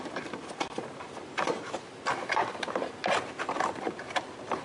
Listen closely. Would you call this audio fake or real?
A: real